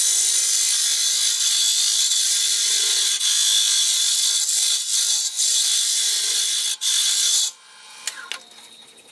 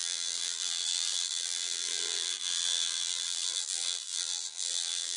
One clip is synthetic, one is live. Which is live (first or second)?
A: first